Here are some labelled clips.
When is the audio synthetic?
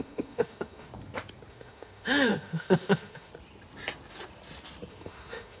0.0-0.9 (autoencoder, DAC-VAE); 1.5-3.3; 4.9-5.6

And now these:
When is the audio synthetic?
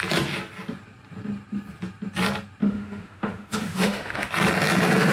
2.6-4.3 (autoencoder, DAC-VAE)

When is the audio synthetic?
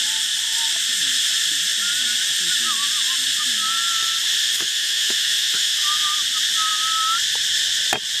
4.4-5.7 (autoencoder, DAC-VAE)